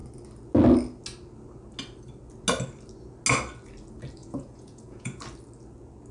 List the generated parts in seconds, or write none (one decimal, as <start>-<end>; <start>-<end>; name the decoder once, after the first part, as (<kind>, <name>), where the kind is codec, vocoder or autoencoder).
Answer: 4.2-5.2 (vocoder, Vocos)